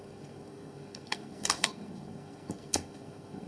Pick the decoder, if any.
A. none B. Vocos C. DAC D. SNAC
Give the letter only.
D